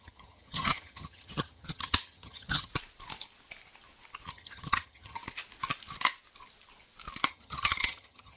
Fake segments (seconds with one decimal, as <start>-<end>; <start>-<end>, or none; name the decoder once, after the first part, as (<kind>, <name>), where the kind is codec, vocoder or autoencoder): 0.0-2.7 (vocoder, HiFi-GAN); 4.3-5.2; 7.3-8.4